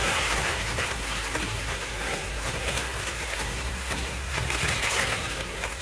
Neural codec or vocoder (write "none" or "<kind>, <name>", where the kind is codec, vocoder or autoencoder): codec, SNAC